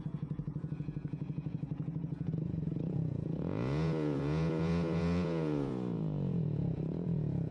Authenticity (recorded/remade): remade